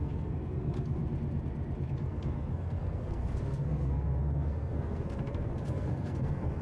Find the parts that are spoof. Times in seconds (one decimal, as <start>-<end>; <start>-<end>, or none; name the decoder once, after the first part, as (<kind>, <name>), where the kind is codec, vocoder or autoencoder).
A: 0.0-1.0 (codec, SNAC); 1.9-6.6